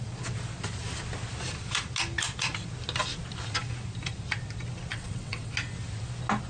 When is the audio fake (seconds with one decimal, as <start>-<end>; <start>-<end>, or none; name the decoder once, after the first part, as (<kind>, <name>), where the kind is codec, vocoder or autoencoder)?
4.9-5.5 (vocoder, WaveNeXt)